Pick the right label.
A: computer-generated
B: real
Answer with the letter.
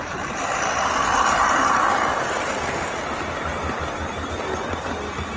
B